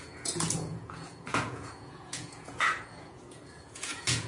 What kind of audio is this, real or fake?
fake